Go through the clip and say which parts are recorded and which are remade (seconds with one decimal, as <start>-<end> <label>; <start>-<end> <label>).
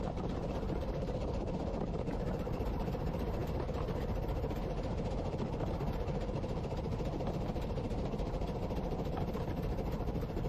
0.0-10.5 remade